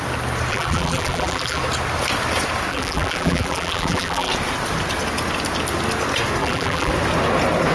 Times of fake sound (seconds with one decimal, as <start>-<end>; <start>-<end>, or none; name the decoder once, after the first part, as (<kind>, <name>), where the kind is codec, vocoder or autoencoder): 0.5-1.6 (vocoder, BigVGAN v2); 2.7-4.3; 6.4-6.9